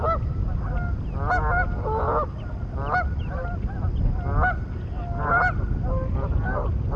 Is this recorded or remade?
recorded